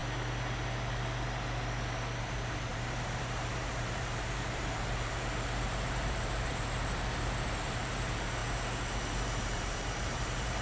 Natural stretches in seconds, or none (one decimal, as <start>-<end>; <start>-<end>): 0.0-2.2; 8.4-9.1